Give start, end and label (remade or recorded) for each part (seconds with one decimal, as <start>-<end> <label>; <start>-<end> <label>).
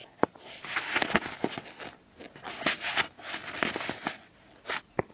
0.0-5.1 recorded